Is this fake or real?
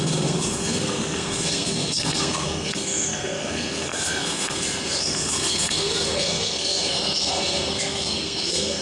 fake